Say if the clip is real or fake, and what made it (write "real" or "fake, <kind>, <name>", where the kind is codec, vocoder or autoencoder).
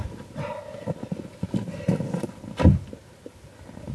real